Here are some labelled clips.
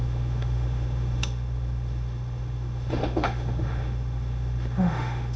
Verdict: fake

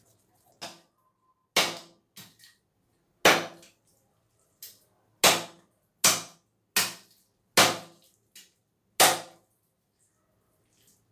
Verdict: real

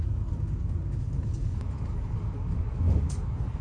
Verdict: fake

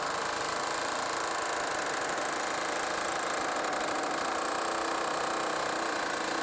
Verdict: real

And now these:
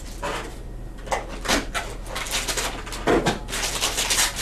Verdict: real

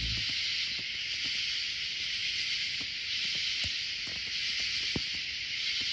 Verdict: real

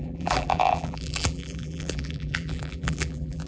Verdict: fake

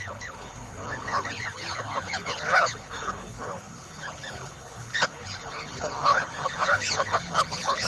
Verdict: fake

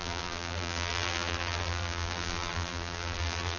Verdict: fake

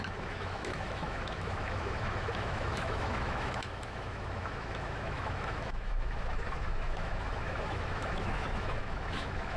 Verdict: fake